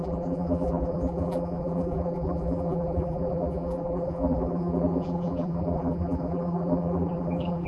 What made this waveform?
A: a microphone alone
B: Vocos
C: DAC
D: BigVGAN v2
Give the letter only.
D